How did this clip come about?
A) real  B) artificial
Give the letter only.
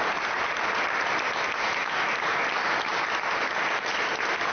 A